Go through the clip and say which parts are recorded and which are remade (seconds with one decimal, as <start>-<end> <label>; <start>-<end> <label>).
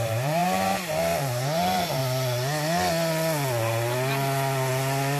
0.0-2.0 remade; 2.0-5.2 recorded